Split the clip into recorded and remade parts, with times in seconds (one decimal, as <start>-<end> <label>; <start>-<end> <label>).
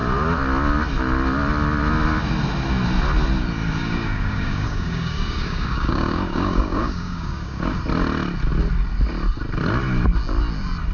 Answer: 0.0-3.8 recorded; 3.8-7.8 remade; 7.8-10.9 recorded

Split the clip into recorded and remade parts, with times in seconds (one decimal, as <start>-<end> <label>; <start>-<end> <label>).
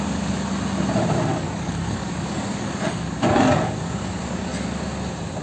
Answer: 0.0-1.3 recorded; 1.3-4.5 remade; 4.5-5.4 recorded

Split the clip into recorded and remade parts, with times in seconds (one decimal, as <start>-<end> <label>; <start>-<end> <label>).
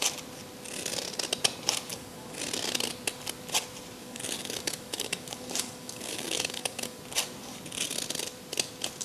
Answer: 0.0-1.9 recorded; 1.9-2.4 remade; 2.4-4.0 recorded; 4.0-7.0 remade; 7.0-9.0 recorded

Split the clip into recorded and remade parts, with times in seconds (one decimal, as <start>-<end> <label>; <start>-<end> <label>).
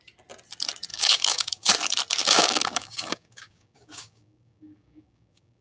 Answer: 0.0-0.9 recorded; 0.9-1.7 remade; 1.7-2.2 recorded; 2.2-5.6 remade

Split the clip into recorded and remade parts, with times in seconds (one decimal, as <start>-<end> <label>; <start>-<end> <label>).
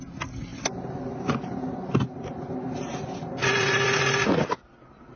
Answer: 0.0-5.2 recorded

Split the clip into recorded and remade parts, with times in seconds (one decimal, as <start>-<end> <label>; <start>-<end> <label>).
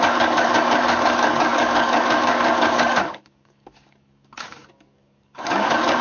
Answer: 0.0-6.0 remade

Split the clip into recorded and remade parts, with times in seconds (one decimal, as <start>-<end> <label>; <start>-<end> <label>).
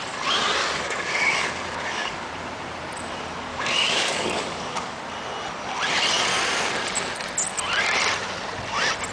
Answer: 0.0-0.6 recorded; 0.6-2.3 remade; 2.3-3.5 recorded; 3.5-5.0 remade; 5.0-9.1 recorded